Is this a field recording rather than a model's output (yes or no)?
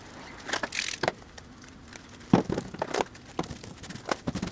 yes